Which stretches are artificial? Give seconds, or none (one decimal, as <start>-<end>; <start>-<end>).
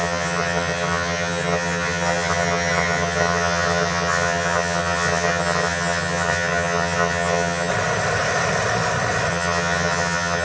0.0-7.7; 9.3-10.4